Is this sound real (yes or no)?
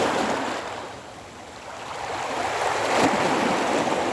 yes